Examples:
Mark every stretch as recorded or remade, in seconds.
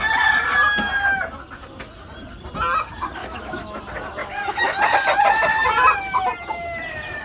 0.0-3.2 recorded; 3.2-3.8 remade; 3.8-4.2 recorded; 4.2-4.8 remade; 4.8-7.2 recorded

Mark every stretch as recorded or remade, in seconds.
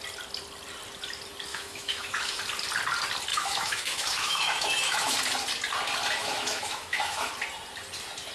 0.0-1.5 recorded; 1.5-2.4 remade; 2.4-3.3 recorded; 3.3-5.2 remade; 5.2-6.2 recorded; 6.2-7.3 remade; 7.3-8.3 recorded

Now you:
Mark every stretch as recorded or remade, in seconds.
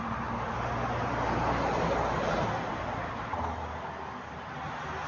0.0-5.1 recorded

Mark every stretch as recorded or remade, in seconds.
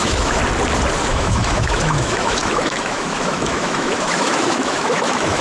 0.0-0.4 remade; 0.4-1.1 recorded; 1.1-5.4 remade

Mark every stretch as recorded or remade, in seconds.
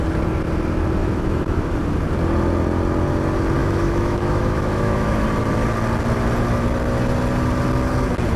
0.0-1.0 recorded; 1.0-1.7 remade; 1.7-3.6 recorded; 3.6-5.2 remade; 5.2-8.4 recorded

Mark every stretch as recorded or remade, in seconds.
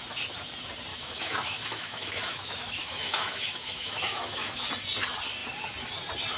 0.0-0.9 recorded; 0.9-4.7 remade; 4.7-6.4 recorded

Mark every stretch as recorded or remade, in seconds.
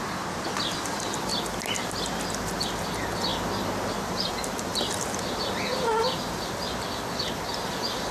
0.0-8.1 recorded